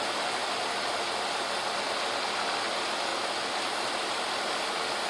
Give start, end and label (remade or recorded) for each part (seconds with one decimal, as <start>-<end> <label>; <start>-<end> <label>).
0.0-5.1 recorded